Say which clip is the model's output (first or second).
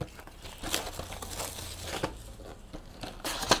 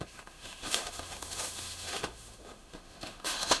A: second